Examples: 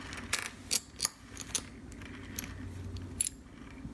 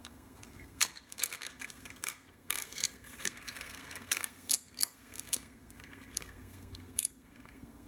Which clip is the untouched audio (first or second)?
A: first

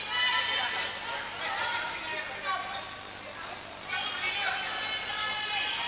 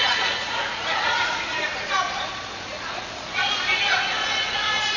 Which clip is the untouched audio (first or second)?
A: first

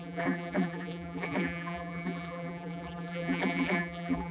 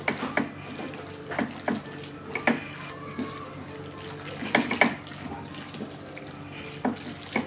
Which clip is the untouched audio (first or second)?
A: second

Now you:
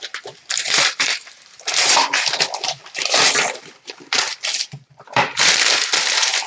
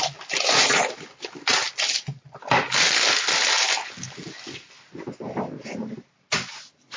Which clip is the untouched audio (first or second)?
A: second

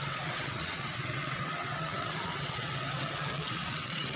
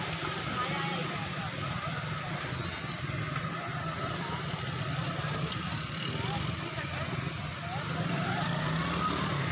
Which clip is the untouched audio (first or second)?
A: second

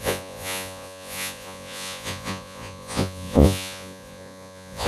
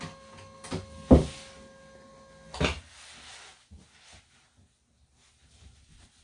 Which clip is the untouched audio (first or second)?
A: second